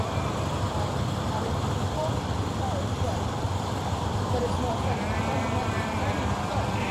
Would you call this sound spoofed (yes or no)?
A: yes